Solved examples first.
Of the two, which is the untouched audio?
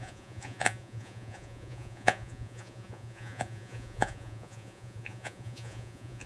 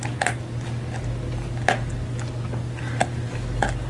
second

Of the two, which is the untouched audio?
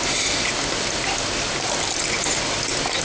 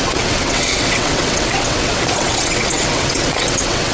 first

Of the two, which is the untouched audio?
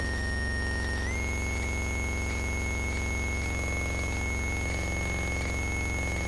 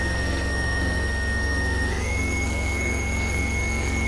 first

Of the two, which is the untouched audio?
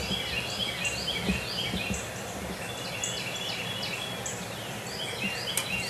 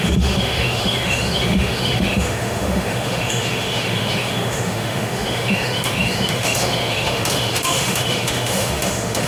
first